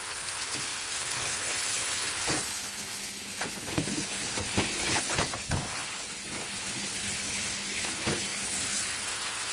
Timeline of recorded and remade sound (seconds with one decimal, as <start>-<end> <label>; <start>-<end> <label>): 0.0-9.5 remade